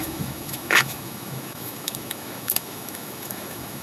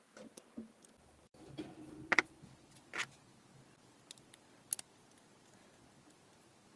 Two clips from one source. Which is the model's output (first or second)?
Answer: first